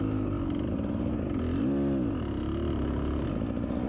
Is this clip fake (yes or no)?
no